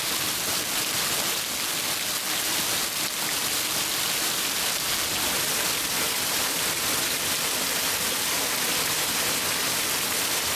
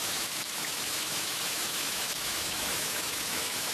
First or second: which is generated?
second